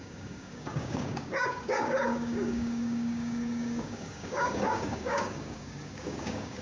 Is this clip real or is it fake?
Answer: fake